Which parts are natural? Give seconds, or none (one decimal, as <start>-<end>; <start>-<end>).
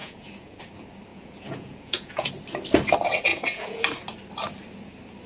0.6-1.1; 2.3-3.3; 3.8-5.3